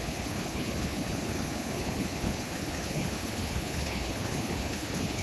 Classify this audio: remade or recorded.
remade